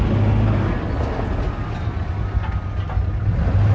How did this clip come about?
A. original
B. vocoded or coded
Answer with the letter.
A